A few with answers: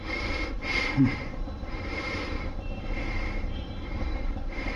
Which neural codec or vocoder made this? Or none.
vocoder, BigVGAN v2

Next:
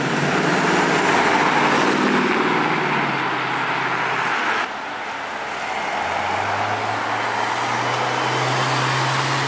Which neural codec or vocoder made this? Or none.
none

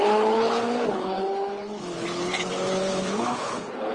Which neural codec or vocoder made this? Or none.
codec, HILCodec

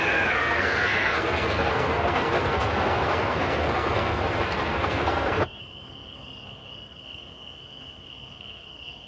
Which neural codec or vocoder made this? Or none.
codec, SNAC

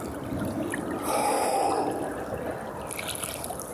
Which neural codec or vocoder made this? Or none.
none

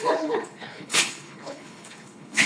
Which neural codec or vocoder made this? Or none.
codec, HILCodec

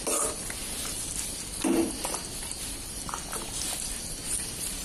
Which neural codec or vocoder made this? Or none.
none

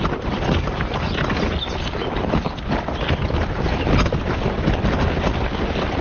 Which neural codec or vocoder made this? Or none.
none